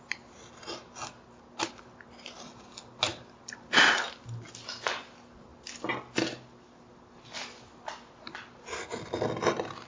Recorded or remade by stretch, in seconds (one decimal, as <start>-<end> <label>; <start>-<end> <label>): 0.0-9.9 recorded